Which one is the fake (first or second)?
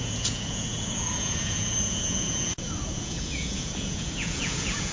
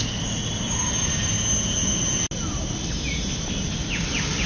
first